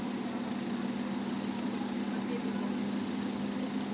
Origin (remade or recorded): recorded